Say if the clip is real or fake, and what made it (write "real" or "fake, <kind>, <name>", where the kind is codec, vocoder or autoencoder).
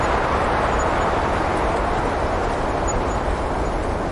real